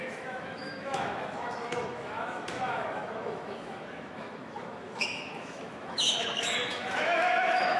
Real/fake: fake